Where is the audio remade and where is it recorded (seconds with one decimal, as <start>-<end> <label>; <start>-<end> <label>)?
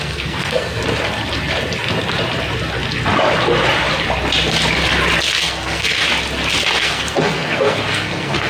0.0-0.8 remade; 0.8-5.4 recorded; 5.4-6.0 remade; 6.0-6.8 recorded; 6.8-8.5 remade